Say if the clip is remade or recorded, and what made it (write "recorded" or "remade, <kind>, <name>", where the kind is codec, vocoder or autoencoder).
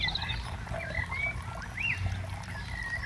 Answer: recorded